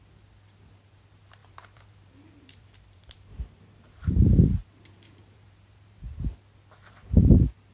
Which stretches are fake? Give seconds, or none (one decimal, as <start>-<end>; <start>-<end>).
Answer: 1.4-6.0; 6.8-7.3